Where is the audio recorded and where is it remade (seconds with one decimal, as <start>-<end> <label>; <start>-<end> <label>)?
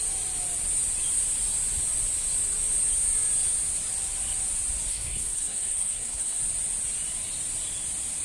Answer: 0.0-4.9 recorded; 4.9-6.4 remade; 6.4-8.2 recorded